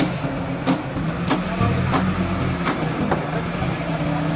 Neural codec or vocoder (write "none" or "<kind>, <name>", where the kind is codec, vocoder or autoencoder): none